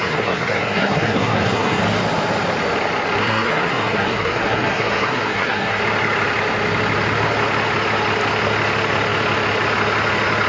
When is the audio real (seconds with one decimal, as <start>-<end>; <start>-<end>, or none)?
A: 1.8-3.2; 5.8-10.5